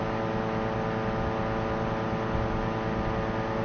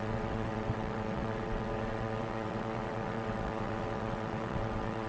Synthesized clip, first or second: second